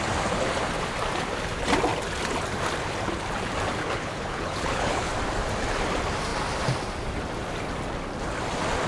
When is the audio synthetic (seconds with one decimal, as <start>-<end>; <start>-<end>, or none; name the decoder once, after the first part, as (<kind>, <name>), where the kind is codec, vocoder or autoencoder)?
3.8-5.1 (codec, HILCodec)